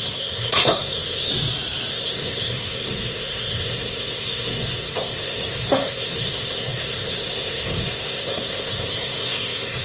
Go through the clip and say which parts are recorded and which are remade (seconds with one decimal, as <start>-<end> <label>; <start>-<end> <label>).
0.0-1.3 remade; 1.3-1.9 recorded; 1.9-9.8 remade